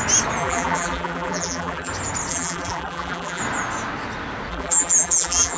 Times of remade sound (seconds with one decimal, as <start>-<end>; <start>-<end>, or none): 0.4-1.9; 2.3-3.4; 4.5-5.6